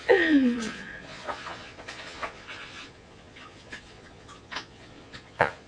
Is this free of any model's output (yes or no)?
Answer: no